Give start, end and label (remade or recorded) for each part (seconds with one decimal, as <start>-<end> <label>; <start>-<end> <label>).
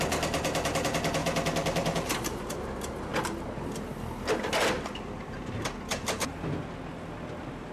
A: 0.0-1.2 recorded; 1.2-2.5 remade; 2.5-7.7 recorded